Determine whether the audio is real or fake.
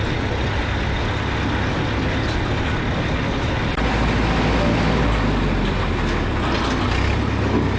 real